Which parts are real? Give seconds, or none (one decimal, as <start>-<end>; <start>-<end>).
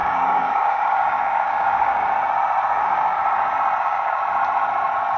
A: 1.9-2.8; 3.2-3.8; 4.2-5.2